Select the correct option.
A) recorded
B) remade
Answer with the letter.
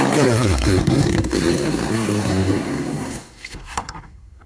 B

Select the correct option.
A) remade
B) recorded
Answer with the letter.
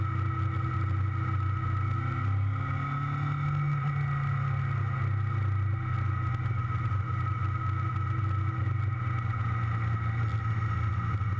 B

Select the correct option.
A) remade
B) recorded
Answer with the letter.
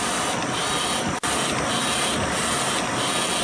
B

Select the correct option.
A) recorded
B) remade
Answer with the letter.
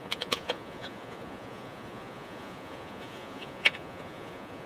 B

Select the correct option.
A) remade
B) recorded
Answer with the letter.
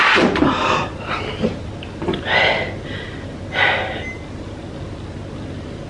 B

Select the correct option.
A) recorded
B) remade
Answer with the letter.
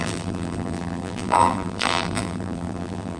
B